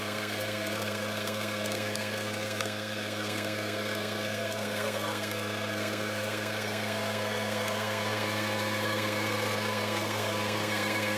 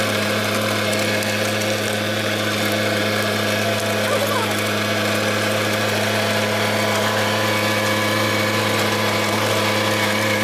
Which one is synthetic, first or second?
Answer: first